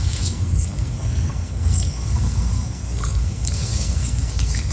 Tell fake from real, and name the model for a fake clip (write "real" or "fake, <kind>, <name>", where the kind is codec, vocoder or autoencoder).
fake, codec, SNAC